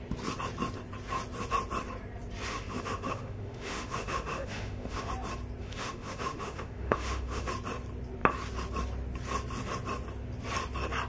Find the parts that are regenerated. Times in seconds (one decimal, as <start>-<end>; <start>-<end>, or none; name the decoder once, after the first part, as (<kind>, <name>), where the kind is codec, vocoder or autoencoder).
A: 2.5-5.1 (autoencoder, DAC-VAE); 5.6-7.5